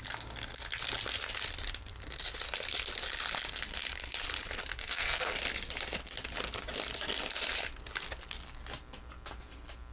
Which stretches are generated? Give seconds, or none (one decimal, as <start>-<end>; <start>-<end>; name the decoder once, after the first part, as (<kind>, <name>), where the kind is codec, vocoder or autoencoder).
4.8-5.3 (codec, SNAC)